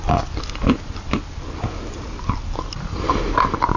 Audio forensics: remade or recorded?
recorded